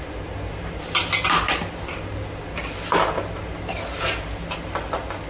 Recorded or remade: recorded